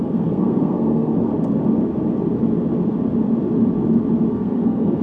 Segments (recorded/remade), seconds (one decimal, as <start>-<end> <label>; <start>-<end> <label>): 0.0-1.3 remade; 1.3-4.3 recorded; 4.3-5.0 remade